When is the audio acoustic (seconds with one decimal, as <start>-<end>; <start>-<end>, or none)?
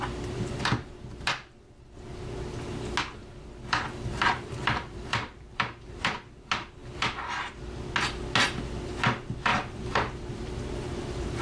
0.0-4.1; 6.0-9.5